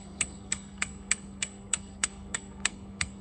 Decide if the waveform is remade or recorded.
remade